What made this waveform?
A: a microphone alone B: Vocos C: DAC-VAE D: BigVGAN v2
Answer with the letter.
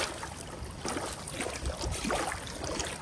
A